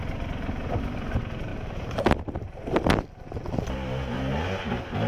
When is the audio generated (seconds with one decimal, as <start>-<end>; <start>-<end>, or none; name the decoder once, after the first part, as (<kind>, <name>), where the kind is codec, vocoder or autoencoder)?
none